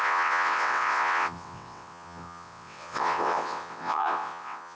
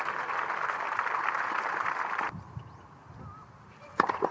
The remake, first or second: first